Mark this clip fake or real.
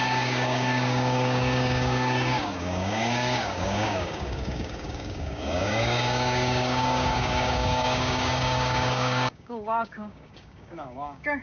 fake